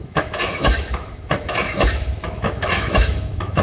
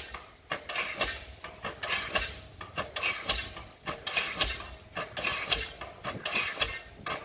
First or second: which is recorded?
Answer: second